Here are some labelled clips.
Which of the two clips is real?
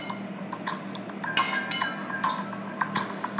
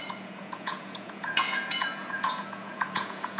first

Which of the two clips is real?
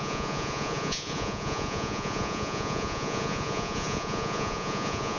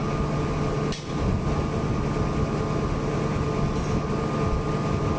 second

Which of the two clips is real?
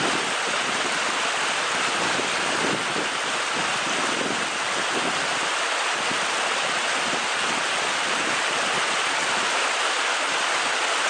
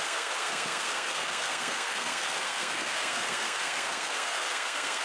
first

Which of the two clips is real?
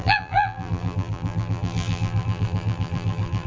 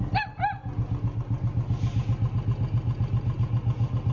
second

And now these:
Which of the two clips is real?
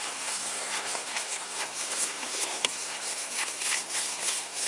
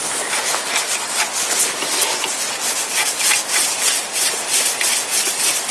second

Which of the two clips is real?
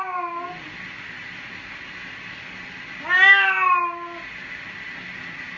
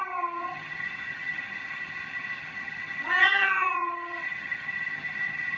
first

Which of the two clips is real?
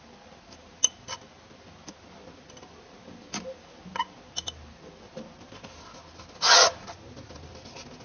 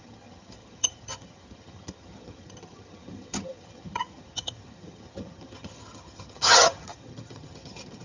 first